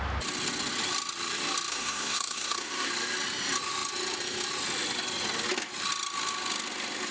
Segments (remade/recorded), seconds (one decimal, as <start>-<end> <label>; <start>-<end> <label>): 0.0-1.7 recorded; 1.7-2.9 remade; 2.9-7.1 recorded